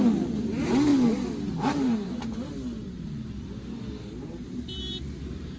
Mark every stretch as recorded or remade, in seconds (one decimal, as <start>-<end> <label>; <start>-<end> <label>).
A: 0.0-5.6 recorded